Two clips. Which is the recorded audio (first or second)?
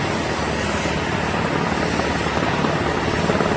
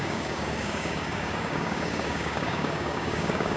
first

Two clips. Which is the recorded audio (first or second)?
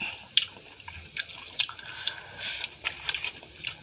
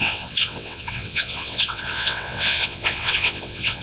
first